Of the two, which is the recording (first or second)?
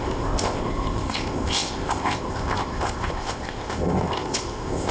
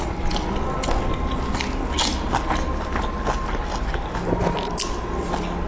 second